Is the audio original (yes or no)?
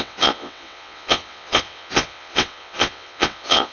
no